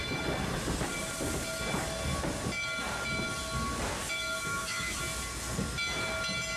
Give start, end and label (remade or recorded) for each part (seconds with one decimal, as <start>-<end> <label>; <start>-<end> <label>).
0.0-4.5 recorded; 4.5-5.0 remade; 5.0-6.6 recorded